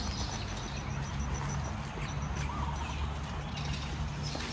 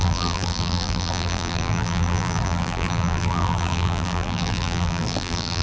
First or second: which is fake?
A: second